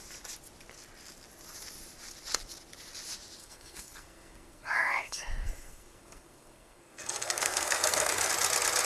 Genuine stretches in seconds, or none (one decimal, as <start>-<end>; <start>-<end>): 0.0-3.4; 8.3-8.8

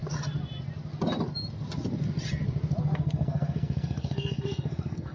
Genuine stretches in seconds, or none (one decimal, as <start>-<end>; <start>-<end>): 0.0-2.8

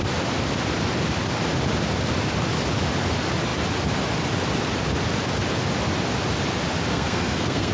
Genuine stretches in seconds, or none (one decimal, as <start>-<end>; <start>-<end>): 0.0-6.9

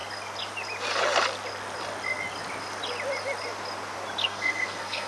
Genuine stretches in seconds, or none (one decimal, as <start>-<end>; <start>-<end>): 0.0-4.2